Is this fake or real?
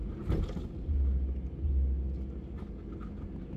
real